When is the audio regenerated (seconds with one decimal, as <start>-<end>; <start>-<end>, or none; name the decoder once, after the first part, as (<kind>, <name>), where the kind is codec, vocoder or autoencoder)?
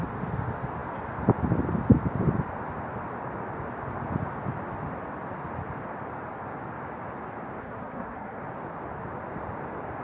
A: 7.6-8.4 (codec, SNAC)